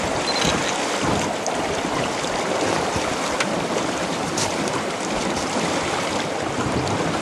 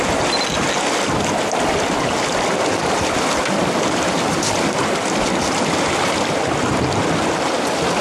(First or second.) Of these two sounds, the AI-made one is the first